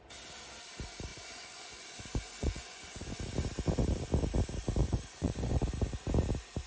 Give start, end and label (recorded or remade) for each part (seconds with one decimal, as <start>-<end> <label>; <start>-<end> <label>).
0.0-1.1 recorded; 1.1-3.2 remade; 3.2-4.8 recorded; 4.8-5.6 remade; 5.6-6.7 recorded